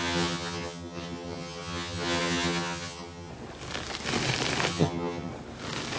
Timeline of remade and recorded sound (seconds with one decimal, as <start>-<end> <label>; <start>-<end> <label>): 0.0-3.3 remade; 3.3-4.7 recorded; 4.7-5.3 remade; 5.3-6.0 recorded